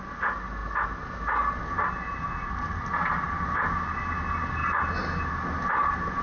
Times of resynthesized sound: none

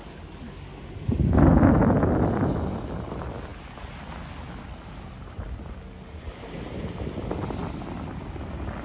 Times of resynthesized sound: none